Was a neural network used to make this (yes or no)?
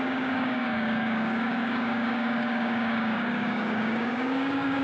yes